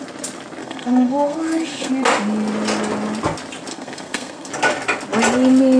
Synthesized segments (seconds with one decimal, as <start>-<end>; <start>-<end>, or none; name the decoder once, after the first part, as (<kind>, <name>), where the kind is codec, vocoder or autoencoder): 0.6-1.9 (codec, SNAC); 3.7-4.5